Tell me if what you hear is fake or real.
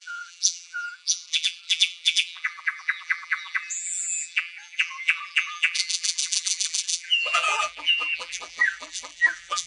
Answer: fake